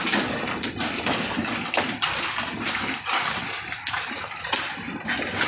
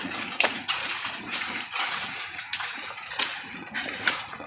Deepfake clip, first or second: second